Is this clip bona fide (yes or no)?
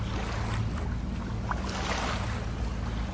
yes